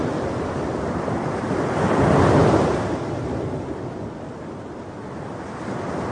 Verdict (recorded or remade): recorded